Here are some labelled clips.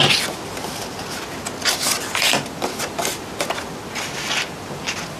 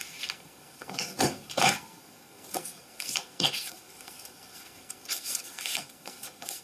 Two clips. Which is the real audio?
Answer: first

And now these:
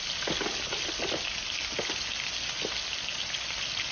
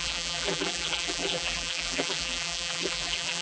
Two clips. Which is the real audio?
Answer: first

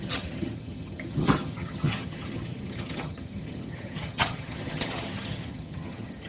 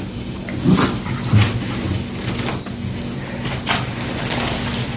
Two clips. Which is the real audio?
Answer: second